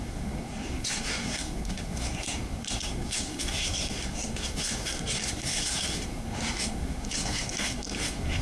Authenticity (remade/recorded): remade